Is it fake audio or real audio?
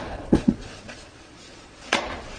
fake